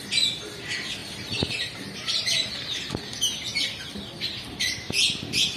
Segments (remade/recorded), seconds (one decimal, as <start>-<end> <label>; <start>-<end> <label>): 0.0-1.0 recorded; 1.0-2.5 remade; 2.5-5.6 recorded

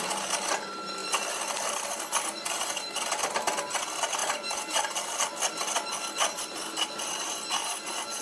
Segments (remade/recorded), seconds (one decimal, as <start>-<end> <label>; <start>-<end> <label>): 0.0-1.0 recorded; 1.0-1.7 remade; 1.7-4.2 recorded; 4.2-5.3 remade; 5.3-8.2 recorded

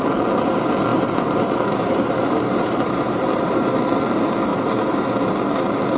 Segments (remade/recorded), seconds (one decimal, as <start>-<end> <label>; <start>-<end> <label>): 0.0-0.9 recorded; 0.9-3.8 remade; 3.8-4.5 recorded; 4.5-5.1 remade; 5.1-6.0 recorded

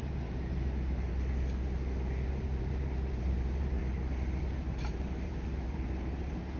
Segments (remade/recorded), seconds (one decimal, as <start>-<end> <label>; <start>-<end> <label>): 0.0-1.1 remade; 1.1-2.3 recorded; 2.3-3.8 remade; 3.8-4.4 recorded; 4.4-6.6 remade